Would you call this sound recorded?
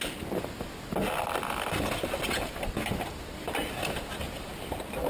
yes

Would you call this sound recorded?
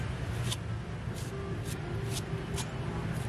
yes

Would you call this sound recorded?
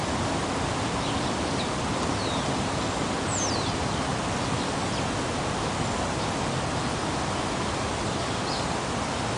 yes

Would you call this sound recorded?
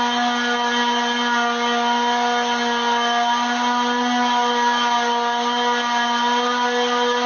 yes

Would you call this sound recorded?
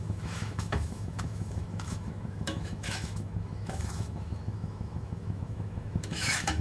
no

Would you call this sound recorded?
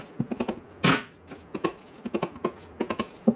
yes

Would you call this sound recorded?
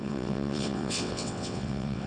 no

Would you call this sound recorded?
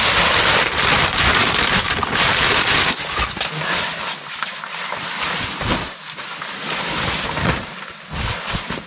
yes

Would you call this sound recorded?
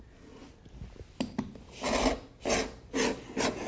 yes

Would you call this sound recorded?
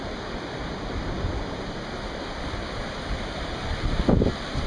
yes